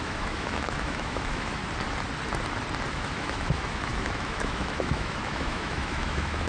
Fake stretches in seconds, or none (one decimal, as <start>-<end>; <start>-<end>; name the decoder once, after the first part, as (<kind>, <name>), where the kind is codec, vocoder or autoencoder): 0.0-1.6 (autoencoder, DAC-VAE); 2.9-6.5